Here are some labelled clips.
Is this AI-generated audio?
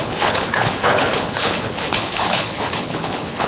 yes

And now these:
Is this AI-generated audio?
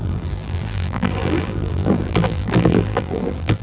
yes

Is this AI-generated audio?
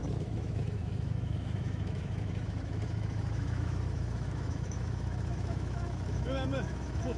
yes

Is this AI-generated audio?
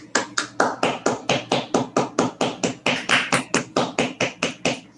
no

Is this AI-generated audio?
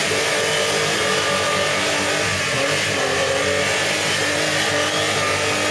no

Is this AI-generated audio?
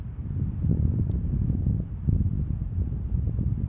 yes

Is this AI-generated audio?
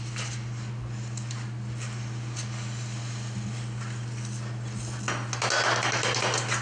no